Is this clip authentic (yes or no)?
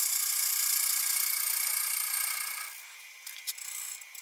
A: yes